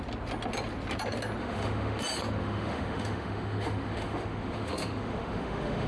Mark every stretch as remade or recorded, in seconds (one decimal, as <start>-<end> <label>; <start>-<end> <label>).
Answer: 0.0-1.4 recorded; 1.4-2.0 remade; 2.0-2.4 recorded; 2.4-5.9 remade